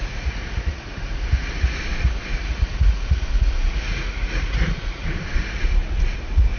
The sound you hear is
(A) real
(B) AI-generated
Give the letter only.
B